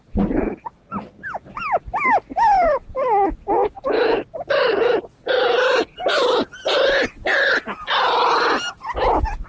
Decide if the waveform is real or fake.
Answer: real